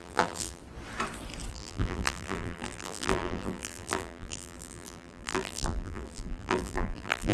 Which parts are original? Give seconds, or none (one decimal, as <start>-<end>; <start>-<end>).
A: 0.6-1.5